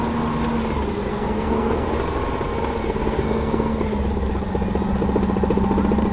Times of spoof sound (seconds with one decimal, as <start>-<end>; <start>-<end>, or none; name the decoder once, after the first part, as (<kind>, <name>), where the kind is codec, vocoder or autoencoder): 1.1-1.9 (codec, SNAC); 2.8-3.8